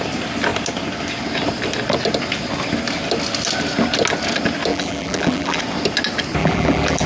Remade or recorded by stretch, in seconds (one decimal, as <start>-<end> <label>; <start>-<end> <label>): 0.0-4.7 recorded; 4.7-5.6 remade; 5.6-6.4 recorded; 6.4-7.1 remade